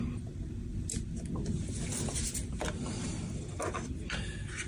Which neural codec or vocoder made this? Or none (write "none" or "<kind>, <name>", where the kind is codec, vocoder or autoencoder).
none